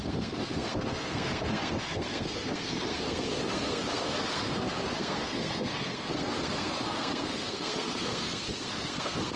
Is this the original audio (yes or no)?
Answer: no